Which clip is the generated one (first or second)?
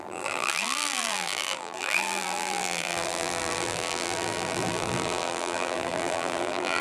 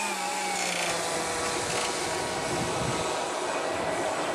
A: first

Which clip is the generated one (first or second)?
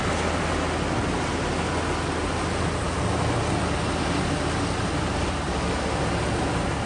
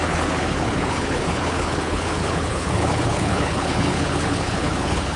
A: second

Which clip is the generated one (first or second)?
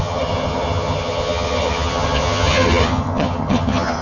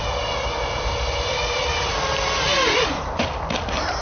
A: first